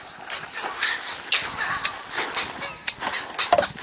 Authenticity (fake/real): real